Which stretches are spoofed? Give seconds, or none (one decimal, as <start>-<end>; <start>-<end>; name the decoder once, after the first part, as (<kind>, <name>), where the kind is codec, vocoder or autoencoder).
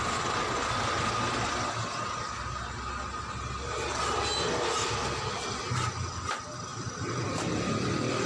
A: 6.7-7.5 (vocoder, BigVGAN v2)